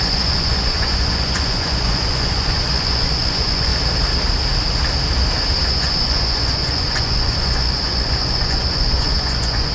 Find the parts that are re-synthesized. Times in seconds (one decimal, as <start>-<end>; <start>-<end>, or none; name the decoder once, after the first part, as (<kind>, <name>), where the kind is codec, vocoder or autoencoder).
0.0-3.7 (vocoder, Vocos); 5.7-9.7